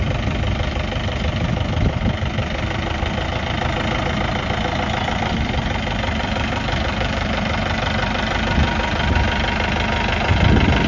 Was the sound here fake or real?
real